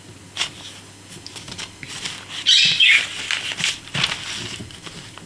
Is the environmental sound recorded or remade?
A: recorded